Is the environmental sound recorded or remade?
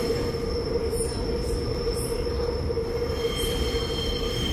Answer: remade